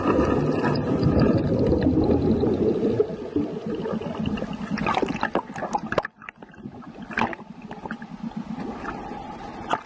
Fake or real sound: real